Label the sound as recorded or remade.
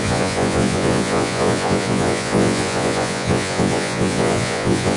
remade